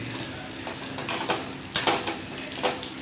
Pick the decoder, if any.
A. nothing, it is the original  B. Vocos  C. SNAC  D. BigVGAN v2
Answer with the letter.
A